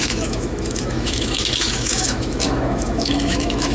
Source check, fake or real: fake